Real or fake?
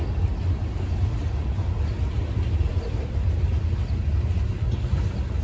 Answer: real